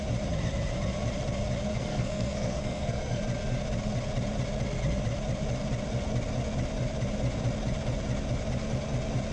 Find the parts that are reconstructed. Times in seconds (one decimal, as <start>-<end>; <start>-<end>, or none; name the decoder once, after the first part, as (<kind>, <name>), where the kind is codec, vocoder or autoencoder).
1.7-3.2 (codec, SNAC)